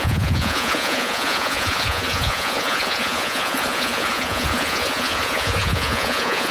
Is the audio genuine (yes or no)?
no